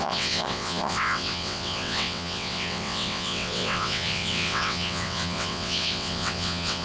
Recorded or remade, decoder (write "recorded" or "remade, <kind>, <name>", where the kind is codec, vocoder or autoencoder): remade, vocoder, WaveNeXt